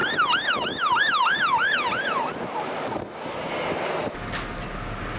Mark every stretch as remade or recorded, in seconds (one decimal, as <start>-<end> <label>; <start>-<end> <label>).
0.0-5.2 recorded